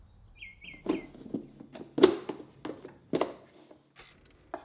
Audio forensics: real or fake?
real